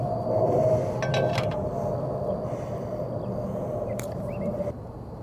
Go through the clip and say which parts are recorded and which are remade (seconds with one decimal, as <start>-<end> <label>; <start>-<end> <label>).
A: 0.0-0.8 remade; 0.8-3.9 recorded; 3.9-5.2 remade